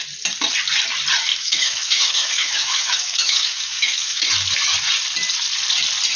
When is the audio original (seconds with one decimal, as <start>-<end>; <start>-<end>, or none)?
0.0-1.3; 4.3-6.2